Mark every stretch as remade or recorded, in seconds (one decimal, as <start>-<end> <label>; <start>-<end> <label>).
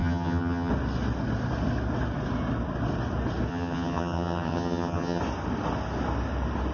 0.0-0.7 remade; 0.7-3.5 recorded; 3.5-5.2 remade; 5.2-6.7 recorded